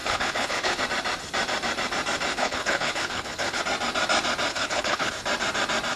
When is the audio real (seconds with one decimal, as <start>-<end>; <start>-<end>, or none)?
0.8-2.3; 3.6-4.5; 5.1-6.0